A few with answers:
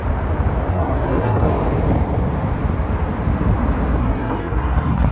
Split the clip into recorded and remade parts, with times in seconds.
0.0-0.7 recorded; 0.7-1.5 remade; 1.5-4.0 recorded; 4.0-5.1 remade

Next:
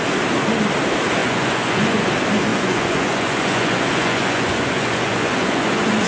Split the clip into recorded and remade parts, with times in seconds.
0.0-1.2 recorded; 1.2-2.1 remade; 2.1-2.5 recorded; 2.5-6.1 remade

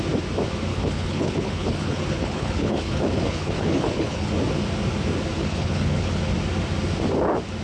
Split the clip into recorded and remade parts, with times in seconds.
0.0-0.7 recorded; 0.7-4.3 remade; 4.3-5.4 recorded; 5.4-6.2 remade; 6.2-7.6 recorded

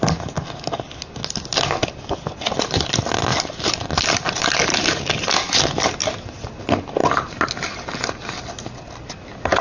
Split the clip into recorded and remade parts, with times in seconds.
0.0-7.0 recorded; 7.0-9.6 remade

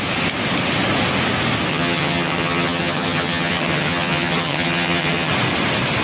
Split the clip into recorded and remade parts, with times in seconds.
0.0-1.7 recorded; 1.7-5.3 remade; 5.3-6.0 recorded

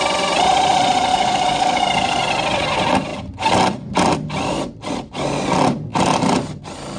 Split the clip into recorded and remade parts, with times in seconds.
0.0-1.1 recorded; 1.1-2.2 remade; 2.2-7.0 recorded

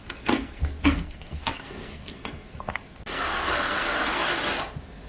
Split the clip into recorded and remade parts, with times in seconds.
0.0-4.3 remade; 4.3-5.1 recorded